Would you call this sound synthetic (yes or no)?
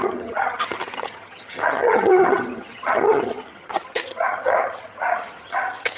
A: yes